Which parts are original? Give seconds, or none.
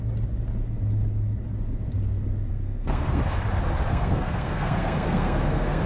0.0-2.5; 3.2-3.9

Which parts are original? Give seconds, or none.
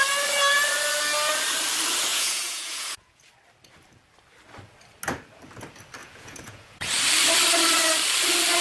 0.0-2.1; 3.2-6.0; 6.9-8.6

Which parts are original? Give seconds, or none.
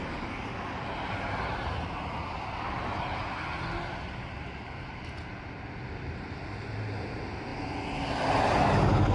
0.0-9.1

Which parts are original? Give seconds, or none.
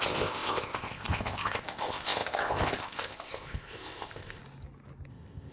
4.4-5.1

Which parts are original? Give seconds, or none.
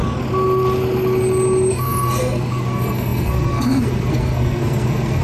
0.0-1.7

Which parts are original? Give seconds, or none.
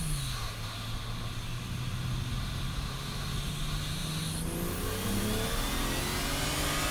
0.0-6.9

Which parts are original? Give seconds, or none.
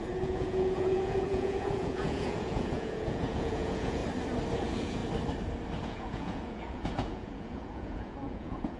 4.0-4.6; 5.0-5.8